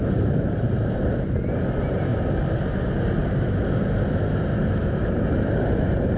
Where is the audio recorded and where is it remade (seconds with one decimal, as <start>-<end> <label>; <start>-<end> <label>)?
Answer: 0.0-2.1 remade; 2.1-2.8 recorded; 2.8-3.2 remade; 3.2-4.3 recorded; 4.3-6.2 remade